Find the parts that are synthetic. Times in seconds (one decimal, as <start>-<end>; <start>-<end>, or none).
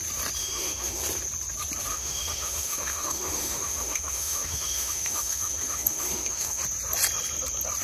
0.4-1.0; 1.9-6.6